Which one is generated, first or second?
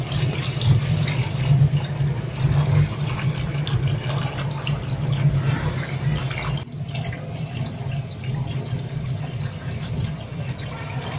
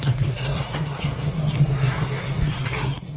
second